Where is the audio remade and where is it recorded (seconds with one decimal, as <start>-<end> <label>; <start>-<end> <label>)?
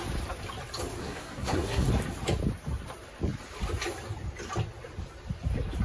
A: 0.0-1.0 recorded; 1.0-1.9 remade; 1.9-5.8 recorded